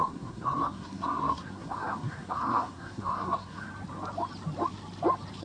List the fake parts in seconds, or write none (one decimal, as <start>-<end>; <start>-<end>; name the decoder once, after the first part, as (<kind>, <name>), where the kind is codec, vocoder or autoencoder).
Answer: 0.0-3.7 (codec, SNAC)